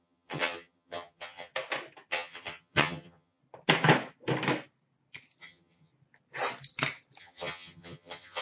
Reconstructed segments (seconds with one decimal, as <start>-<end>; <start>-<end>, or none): 0.0-1.5; 2.1-3.4; 5.4-5.9; 7.2-8.4